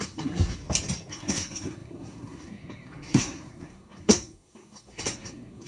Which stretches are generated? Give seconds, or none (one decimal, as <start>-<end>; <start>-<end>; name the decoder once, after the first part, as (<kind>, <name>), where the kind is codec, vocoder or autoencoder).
0.0-0.6 (codec, SNAC); 1.1-5.7